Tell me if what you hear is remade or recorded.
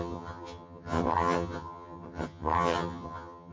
remade